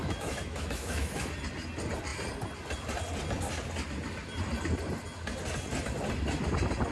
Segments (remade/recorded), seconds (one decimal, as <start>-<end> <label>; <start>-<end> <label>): 0.0-1.3 remade; 1.3-6.9 recorded